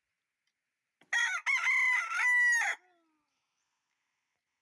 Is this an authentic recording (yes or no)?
yes